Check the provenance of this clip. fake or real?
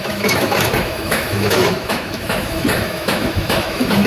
fake